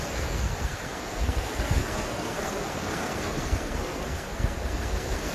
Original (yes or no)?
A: no